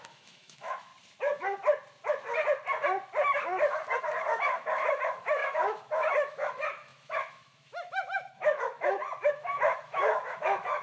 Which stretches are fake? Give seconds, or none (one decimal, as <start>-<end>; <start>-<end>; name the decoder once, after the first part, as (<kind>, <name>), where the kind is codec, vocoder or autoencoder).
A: 0.0-0.9 (autoencoder, DAC-VAE); 4.0-10.8